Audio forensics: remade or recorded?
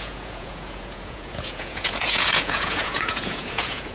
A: remade